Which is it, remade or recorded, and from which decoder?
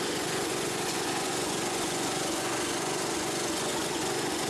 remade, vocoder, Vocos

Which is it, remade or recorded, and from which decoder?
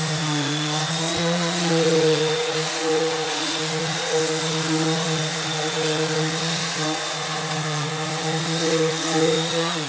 remade, vocoder, Vocos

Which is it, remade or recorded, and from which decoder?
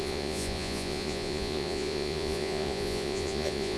remade, vocoder, Vocos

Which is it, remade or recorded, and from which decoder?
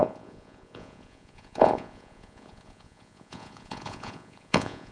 remade, vocoder, Vocos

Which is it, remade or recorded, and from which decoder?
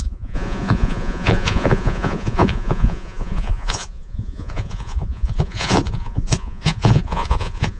remade, vocoder, Vocos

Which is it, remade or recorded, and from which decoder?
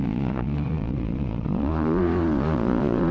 remade, vocoder, Vocos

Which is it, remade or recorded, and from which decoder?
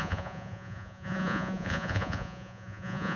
remade, vocoder, Vocos